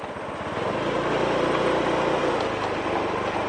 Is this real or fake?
real